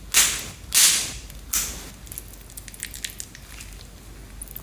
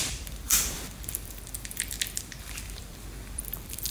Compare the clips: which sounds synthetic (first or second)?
second